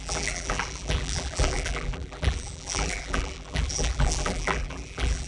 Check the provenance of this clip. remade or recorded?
remade